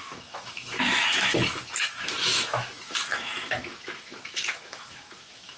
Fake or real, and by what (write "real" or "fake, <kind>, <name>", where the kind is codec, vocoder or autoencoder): fake, autoencoder, DAC-VAE